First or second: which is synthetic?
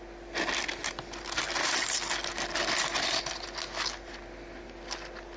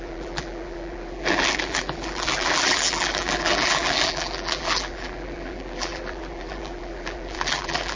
second